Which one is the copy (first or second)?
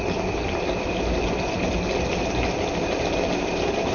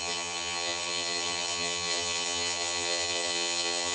second